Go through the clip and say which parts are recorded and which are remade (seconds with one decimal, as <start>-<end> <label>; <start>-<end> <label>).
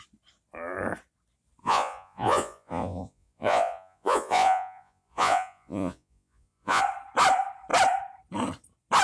0.0-1.6 recorded; 1.6-6.8 remade; 6.8-9.0 recorded